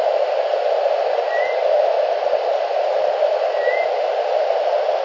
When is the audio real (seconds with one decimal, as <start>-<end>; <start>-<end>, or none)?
0.0-5.0